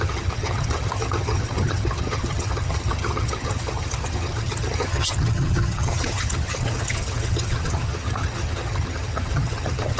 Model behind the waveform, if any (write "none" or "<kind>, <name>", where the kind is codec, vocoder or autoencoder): vocoder, HiFi-GAN